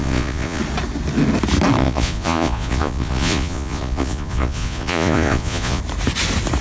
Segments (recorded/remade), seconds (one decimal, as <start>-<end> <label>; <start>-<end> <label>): 0.0-0.6 remade; 0.6-1.8 recorded; 1.8-5.8 remade; 5.8-6.6 recorded